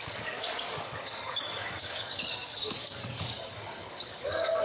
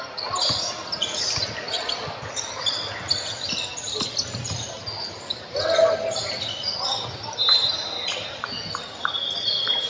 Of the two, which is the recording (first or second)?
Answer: second